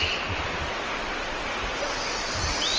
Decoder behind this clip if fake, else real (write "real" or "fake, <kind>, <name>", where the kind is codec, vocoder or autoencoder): real